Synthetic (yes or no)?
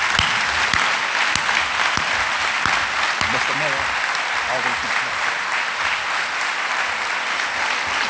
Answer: no